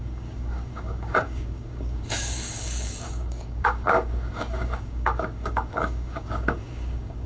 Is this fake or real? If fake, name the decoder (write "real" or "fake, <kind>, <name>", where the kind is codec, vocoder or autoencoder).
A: fake, codec, DAC